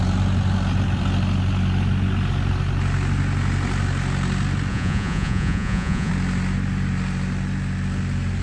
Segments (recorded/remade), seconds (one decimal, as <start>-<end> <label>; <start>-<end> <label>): 0.0-4.7 recorded; 4.7-6.1 remade; 6.1-8.4 recorded

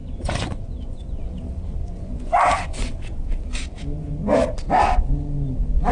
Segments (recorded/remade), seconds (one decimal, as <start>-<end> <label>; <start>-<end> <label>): 0.0-1.3 remade; 1.3-1.8 recorded; 1.8-2.9 remade; 2.9-5.9 recorded

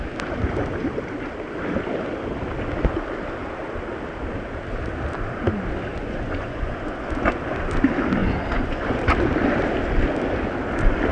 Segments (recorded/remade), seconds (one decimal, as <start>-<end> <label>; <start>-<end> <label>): 0.0-5.9 recorded; 5.9-7.4 remade; 7.4-8.2 recorded; 8.2-9.0 remade; 9.0-11.1 recorded